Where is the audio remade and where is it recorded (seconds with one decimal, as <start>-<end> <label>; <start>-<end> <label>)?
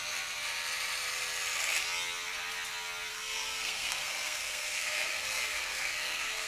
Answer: 0.0-3.1 recorded; 3.1-6.5 remade